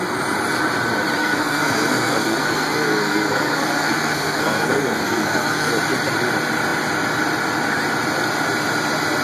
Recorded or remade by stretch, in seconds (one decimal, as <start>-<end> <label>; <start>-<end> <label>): 0.0-1.2 recorded; 1.2-5.7 remade; 5.7-9.2 recorded